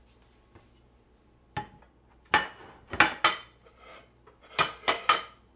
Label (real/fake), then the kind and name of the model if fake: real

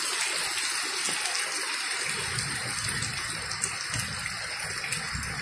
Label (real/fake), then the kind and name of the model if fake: real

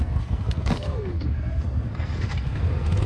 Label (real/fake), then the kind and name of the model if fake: fake, codec, SNAC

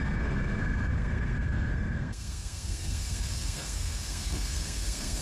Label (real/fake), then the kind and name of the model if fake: fake, codec, SNAC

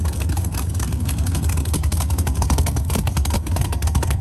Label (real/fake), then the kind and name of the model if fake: fake, codec, SNAC